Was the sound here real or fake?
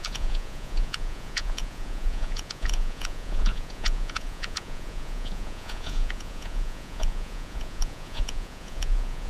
fake